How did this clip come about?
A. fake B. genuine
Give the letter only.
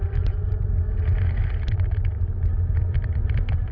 B